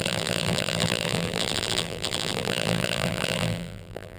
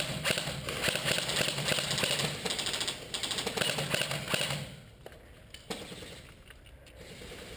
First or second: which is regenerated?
first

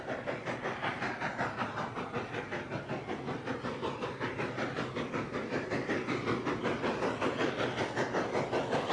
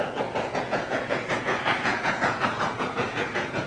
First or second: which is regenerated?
second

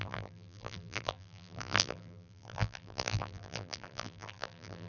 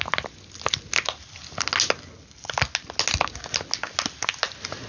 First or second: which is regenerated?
first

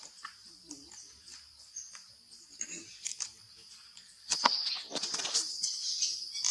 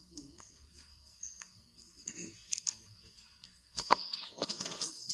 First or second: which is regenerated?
second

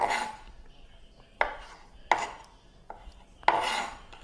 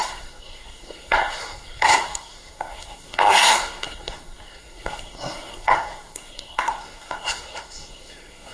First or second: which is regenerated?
second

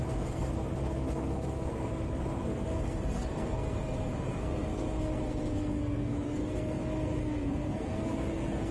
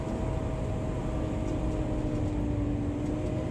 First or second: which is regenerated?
first